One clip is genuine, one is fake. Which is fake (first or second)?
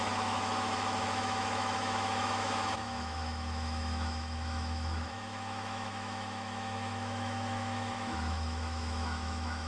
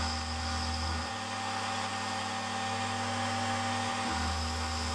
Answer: first